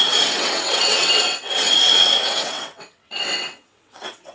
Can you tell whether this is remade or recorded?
remade